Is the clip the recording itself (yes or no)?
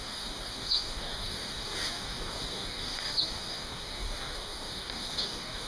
no